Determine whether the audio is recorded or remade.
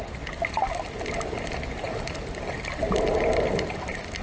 recorded